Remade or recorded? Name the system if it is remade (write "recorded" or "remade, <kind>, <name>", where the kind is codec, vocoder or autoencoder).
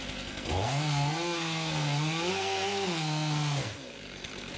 remade, codec, SNAC